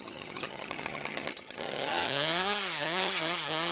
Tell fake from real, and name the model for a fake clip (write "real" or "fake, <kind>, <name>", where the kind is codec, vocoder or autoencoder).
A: fake, vocoder, HiFi-GAN